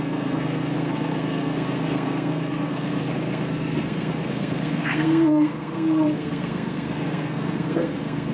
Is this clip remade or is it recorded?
remade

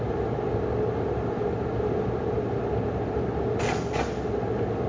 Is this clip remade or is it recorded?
recorded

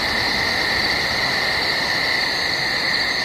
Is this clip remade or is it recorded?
recorded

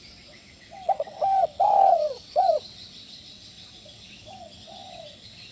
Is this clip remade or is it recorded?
remade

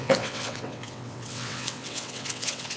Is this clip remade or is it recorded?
remade